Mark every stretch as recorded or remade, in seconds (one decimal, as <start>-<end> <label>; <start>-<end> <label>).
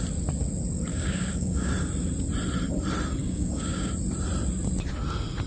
0.0-0.9 recorded; 0.9-1.7 remade; 1.7-3.2 recorded; 3.2-3.9 remade; 3.9-5.5 recorded